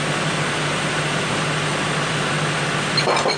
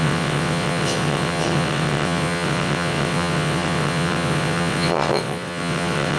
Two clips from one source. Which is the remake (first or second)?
second